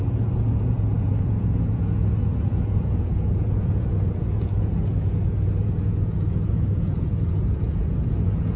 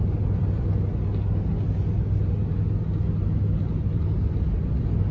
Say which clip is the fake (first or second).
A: first